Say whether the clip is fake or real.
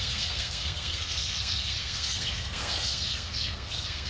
fake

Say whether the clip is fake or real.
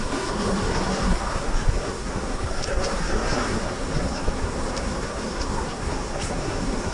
fake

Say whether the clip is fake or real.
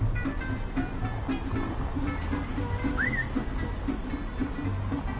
real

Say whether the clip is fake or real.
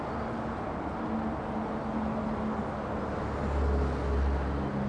real